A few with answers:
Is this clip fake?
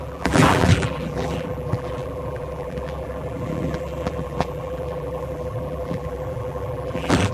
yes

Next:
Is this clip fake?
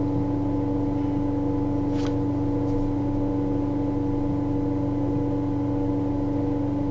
no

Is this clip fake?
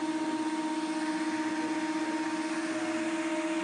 no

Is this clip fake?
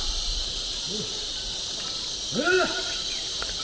no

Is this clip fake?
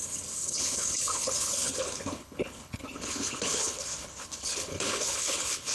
yes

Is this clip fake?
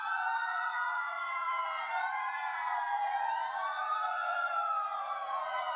yes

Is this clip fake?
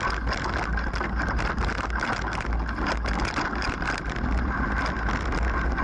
no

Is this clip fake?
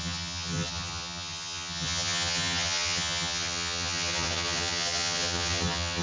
yes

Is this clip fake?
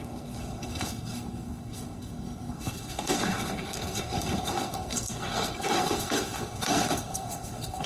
yes